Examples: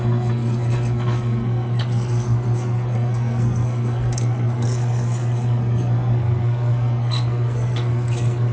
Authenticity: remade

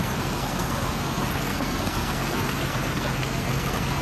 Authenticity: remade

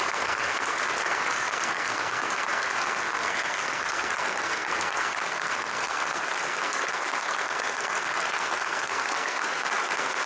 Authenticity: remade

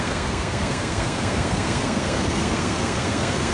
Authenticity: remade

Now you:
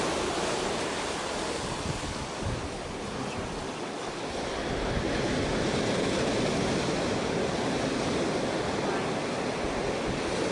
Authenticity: recorded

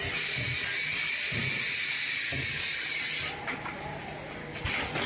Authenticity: recorded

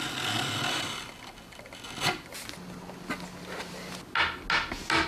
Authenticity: recorded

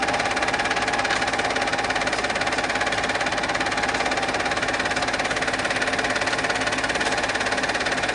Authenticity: recorded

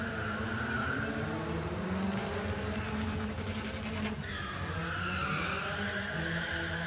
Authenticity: recorded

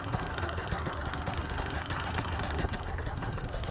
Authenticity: remade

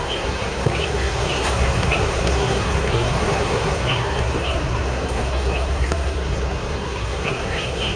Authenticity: remade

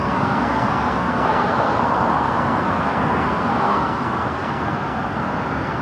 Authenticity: remade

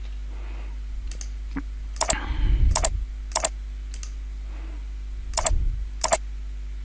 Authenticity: recorded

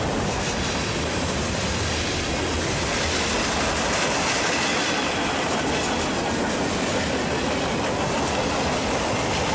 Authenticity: recorded